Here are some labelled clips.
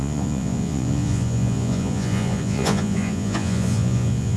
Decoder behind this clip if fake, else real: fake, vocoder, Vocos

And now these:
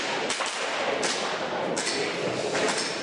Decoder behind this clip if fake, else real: real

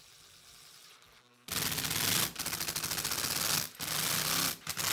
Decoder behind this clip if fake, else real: real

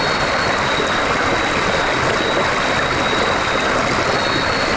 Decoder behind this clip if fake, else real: real